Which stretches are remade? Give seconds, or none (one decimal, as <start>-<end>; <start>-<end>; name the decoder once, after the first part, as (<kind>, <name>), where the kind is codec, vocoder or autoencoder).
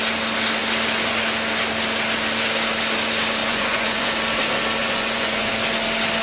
3.4-4.1 (vocoder, Vocos); 4.8-5.5